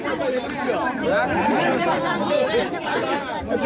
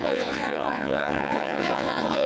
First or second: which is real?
first